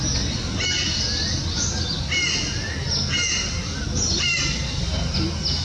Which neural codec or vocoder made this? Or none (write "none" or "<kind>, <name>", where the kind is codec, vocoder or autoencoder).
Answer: none